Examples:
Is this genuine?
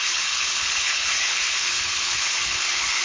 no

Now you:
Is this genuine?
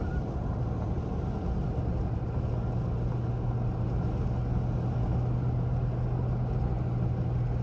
yes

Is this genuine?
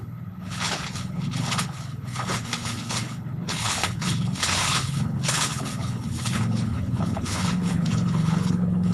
no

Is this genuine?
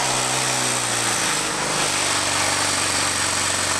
yes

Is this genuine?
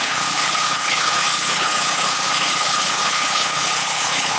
no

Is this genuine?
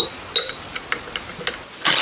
yes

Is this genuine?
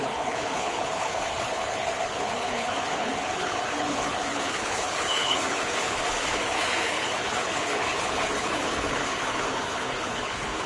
no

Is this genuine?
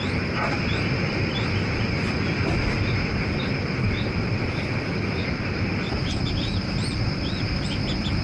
yes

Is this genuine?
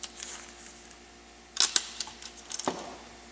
yes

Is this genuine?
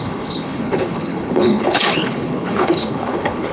no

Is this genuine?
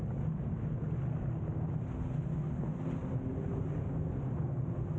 yes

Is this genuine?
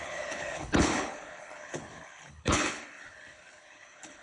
no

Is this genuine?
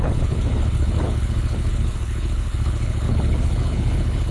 no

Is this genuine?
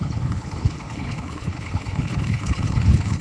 no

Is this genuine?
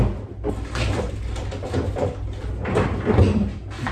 yes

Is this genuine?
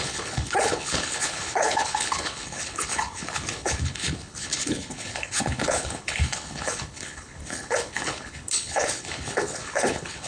no